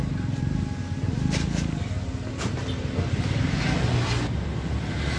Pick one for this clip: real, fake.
real